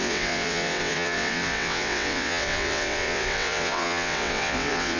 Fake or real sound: fake